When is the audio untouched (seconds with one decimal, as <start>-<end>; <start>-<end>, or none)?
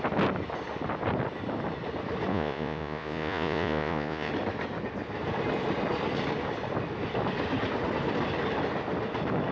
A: 0.0-2.3; 4.3-9.5